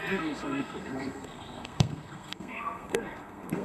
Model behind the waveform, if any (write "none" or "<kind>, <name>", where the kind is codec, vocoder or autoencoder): codec, SNAC